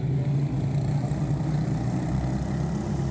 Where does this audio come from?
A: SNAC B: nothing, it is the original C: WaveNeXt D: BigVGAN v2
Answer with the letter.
B